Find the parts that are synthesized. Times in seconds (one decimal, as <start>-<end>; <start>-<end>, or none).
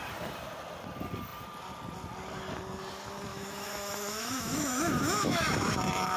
3.3-5.8